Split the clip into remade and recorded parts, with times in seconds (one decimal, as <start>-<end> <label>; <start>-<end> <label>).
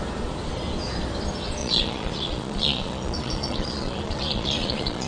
0.0-1.6 recorded; 1.6-5.1 remade